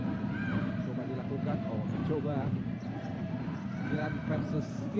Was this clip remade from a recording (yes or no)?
yes